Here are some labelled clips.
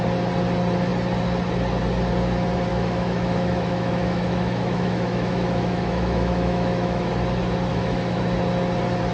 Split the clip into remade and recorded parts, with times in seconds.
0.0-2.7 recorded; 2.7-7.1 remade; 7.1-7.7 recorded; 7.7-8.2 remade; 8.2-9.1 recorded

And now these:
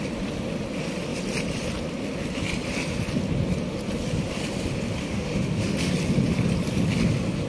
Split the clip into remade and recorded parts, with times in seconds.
0.0-5.0 recorded; 5.0-5.9 remade; 5.9-7.5 recorded

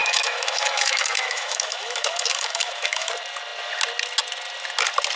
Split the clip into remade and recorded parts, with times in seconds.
0.0-3.1 remade; 3.1-5.2 recorded

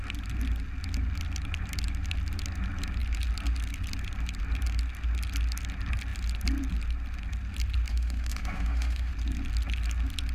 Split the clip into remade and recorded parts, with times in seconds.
0.0-7.9 recorded; 7.9-9.1 remade; 9.1-10.3 recorded

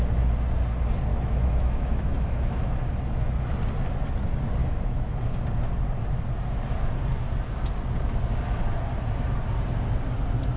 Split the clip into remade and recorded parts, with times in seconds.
0.0-1.1 recorded; 1.1-2.8 remade; 2.8-4.6 recorded; 4.6-5.2 remade; 5.2-10.6 recorded

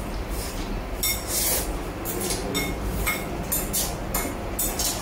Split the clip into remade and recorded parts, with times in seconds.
0.0-5.0 recorded

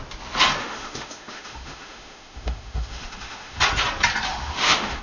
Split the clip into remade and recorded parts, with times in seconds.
0.0-0.6 recorded; 0.6-3.6 remade; 3.6-4.3 recorded; 4.3-5.0 remade

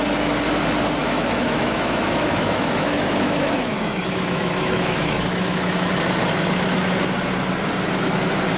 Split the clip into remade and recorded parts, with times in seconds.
0.0-1.0 recorded; 1.0-5.9 remade; 5.9-8.6 recorded